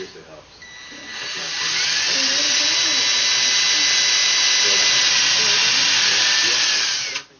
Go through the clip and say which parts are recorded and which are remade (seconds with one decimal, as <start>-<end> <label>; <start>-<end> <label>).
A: 0.0-7.4 recorded